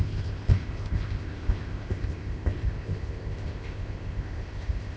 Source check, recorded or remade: remade